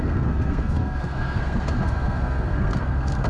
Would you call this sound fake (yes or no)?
yes